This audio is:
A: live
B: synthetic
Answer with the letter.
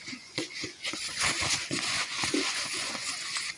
B